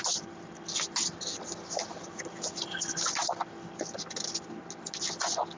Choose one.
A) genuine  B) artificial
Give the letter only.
A